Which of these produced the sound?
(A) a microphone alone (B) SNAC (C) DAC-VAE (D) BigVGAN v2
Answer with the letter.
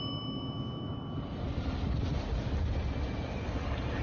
A